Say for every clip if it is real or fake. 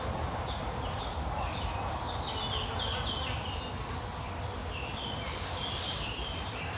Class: real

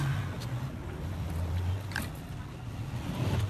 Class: real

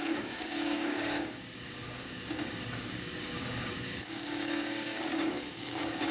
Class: fake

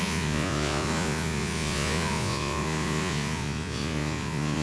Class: fake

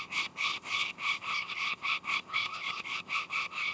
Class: fake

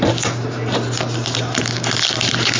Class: real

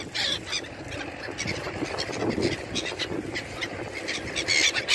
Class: real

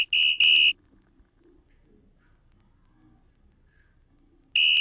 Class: real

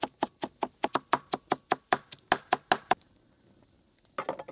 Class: real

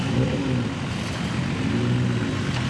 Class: real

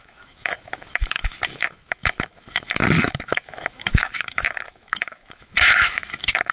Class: fake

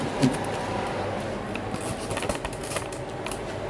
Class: real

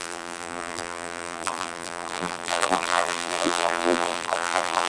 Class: fake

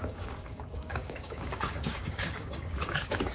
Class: fake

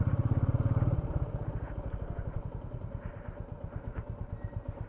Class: real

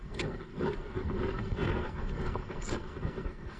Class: fake